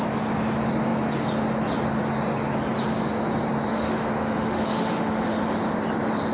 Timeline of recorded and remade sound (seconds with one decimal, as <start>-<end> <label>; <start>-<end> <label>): 0.0-3.7 recorded; 3.7-5.4 remade; 5.4-6.3 recorded